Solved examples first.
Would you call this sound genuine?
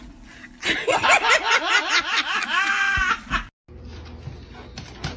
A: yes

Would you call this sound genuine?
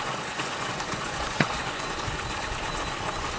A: no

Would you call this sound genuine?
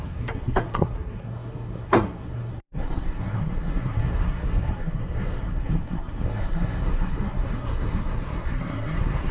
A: no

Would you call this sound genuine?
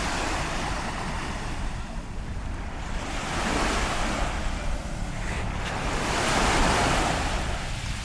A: yes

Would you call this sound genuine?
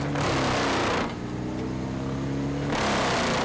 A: yes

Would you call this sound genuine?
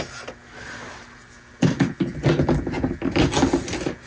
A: yes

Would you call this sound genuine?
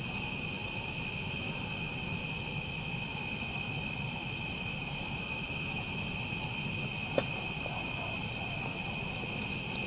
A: yes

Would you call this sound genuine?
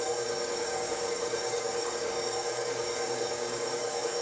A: no